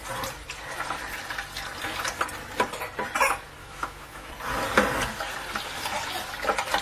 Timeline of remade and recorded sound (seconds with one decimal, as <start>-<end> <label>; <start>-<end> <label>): 0.0-3.6 recorded; 3.6-4.3 remade; 4.3-6.8 recorded